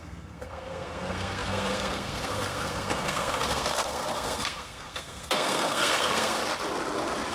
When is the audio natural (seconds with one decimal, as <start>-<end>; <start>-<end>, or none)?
6.4-7.3

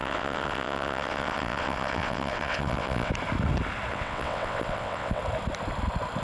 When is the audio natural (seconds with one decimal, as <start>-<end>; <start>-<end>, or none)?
3.1-3.9; 5.2-6.2

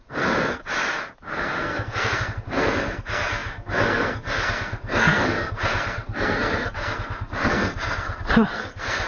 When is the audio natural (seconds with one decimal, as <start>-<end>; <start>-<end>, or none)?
0.6-1.3

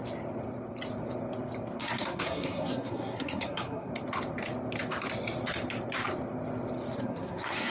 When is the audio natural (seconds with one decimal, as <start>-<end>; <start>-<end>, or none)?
0.0-1.8; 3.9-7.0

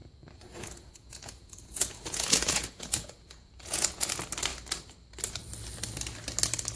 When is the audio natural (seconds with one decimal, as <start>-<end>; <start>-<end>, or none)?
4.1-6.8